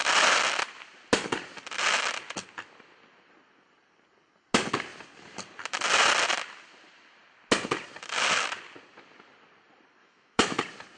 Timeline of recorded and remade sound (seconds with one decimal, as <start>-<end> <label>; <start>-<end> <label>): 0.0-10.0 recorded; 10.0-10.6 remade; 10.6-11.0 recorded